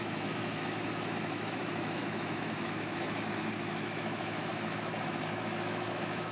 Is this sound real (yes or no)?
no